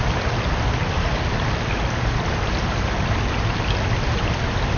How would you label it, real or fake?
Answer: real